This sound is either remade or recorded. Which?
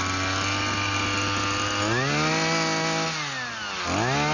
recorded